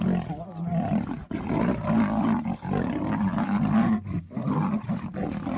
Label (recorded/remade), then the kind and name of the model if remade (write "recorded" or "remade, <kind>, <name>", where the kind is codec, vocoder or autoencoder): recorded